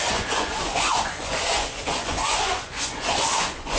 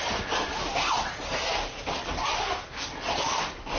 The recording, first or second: second